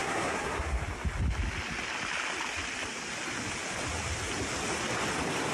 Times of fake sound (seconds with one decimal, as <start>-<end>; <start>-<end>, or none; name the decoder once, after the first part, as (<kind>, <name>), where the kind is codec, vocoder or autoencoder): 0.0-0.8 (codec, SNAC)